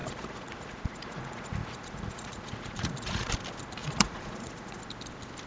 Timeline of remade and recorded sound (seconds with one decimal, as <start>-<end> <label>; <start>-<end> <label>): 0.0-3.3 remade; 3.3-3.8 recorded; 3.8-4.8 remade; 4.8-5.5 recorded